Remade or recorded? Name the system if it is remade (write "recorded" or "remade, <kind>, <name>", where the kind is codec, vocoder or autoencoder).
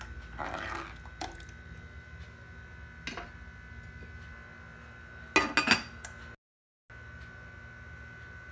recorded